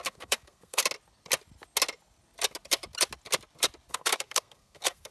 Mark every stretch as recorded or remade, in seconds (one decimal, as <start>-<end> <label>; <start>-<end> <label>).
0.0-0.8 remade; 0.8-3.9 recorded; 3.9-5.1 remade